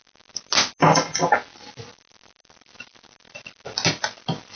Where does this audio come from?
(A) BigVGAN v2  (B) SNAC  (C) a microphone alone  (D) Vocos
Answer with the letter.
C